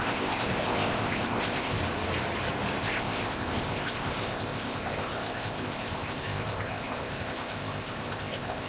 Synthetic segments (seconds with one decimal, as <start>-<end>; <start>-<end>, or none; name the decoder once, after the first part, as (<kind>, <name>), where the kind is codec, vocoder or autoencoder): 0.0-1.8 (codec, ZipCodec); 2.8-8.7